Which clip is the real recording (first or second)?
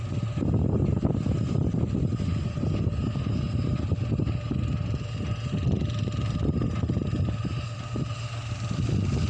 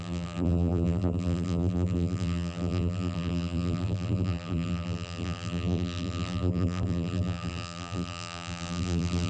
first